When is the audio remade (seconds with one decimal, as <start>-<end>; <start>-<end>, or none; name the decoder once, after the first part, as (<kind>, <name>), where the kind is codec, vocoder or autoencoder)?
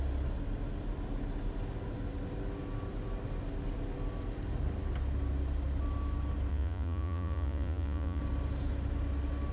6.5-8.2 (vocoder, Vocos)